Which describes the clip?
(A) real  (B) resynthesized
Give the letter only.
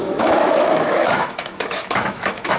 B